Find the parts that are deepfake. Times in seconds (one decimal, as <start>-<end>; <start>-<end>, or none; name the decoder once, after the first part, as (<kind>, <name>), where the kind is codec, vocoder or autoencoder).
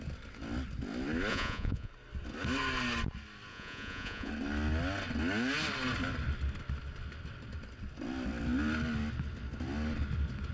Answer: 1.3-1.9 (vocoder, Vocos); 3.5-4.3